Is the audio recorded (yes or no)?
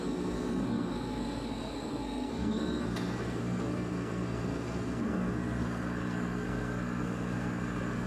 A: no